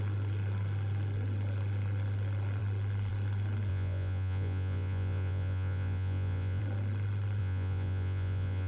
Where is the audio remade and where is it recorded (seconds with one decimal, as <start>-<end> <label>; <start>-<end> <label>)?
0.0-3.7 recorded; 3.7-6.6 remade; 6.6-7.4 recorded; 7.4-8.7 remade